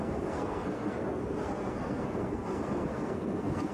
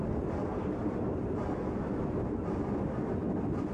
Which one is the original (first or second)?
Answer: second